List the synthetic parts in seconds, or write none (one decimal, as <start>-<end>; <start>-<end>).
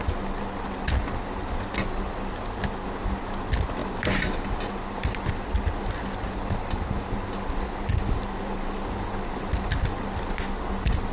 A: none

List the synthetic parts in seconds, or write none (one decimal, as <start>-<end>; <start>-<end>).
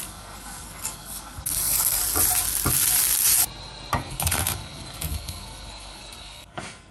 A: 0.0-2.0; 3.9-6.9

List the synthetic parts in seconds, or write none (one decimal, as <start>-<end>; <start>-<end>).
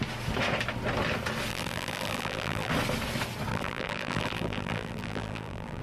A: 1.5-2.7; 3.5-5.8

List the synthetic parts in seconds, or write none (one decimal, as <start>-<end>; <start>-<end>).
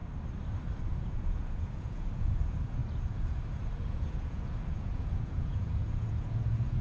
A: 0.8-6.8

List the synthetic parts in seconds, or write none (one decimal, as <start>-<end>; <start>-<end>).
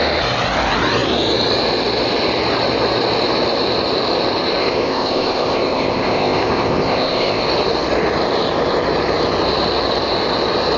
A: 4.6-7.4